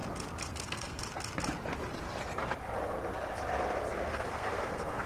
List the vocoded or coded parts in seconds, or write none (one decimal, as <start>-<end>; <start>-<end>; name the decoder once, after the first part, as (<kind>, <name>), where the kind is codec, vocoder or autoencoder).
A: 0.5-1.0 (codec, SNAC); 4.1-5.1